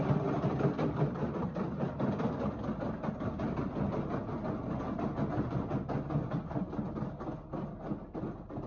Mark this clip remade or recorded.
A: recorded